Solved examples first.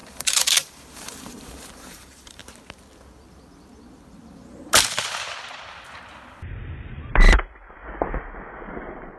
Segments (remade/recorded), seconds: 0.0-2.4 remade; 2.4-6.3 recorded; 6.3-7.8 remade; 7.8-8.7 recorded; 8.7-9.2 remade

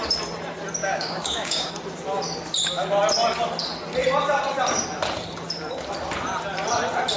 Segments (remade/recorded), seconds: 0.0-0.8 recorded; 0.8-1.7 remade; 1.7-7.2 recorded

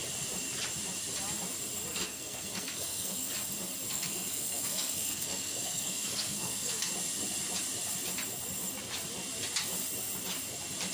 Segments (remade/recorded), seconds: 0.0-1.9 recorded; 1.9-3.3 remade; 3.3-3.9 recorded; 3.9-6.9 remade; 6.9-10.9 recorded

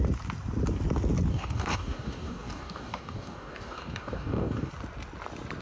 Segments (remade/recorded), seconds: 0.0-1.3 recorded; 1.3-4.7 remade; 4.7-5.6 recorded